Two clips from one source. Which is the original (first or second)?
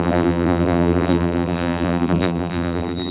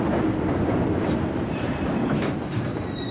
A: second